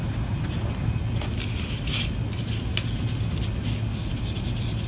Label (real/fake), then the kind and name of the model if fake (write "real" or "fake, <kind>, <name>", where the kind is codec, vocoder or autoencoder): real